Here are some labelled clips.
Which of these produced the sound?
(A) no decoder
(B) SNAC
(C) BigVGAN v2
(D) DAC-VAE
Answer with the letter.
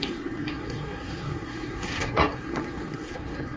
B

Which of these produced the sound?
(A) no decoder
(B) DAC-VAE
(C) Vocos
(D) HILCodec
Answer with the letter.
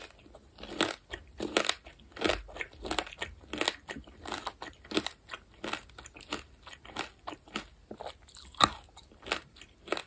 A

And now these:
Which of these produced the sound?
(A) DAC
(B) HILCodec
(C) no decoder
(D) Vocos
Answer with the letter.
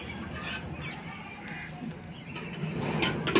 C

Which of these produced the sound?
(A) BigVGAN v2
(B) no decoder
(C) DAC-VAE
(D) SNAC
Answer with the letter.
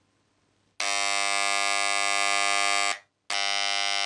B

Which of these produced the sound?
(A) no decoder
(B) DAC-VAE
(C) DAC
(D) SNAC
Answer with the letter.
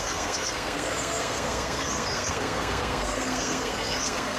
D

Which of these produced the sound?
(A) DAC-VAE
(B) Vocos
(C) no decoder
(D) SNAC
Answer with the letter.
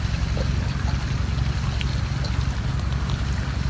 C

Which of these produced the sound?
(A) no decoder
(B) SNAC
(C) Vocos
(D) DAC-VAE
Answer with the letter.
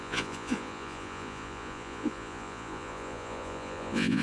C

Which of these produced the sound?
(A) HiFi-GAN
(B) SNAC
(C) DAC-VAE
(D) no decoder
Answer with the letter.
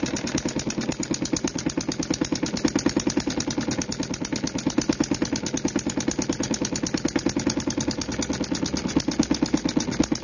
D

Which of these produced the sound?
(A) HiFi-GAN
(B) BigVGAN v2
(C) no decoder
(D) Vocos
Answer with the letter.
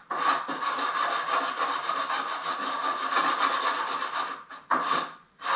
C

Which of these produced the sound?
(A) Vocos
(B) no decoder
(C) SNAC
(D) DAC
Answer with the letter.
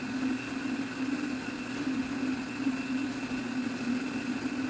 B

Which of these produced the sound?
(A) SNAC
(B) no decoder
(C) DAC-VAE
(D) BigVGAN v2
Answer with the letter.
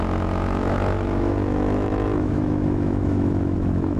C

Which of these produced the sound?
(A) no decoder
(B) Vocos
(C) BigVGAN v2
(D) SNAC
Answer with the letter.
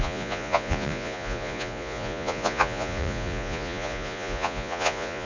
B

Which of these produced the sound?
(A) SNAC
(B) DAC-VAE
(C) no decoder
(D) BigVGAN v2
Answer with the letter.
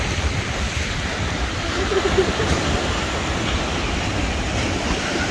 C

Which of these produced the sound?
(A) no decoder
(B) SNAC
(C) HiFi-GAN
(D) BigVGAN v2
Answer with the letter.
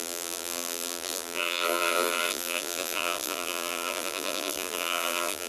D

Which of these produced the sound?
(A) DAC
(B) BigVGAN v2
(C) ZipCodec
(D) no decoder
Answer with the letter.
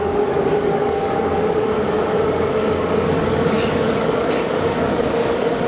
A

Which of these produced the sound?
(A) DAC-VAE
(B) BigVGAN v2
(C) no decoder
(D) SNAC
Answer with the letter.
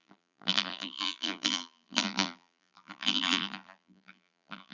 B